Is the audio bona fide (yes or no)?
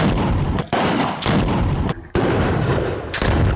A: yes